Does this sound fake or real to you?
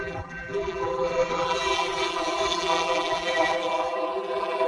fake